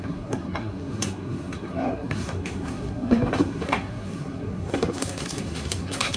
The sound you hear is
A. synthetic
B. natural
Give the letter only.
A